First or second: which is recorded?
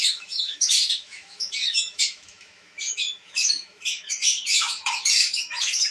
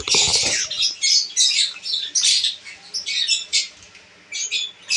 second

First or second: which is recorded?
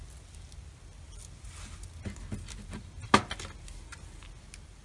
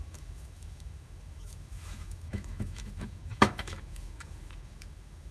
first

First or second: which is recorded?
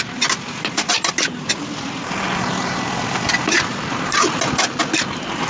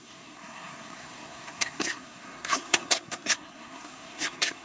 first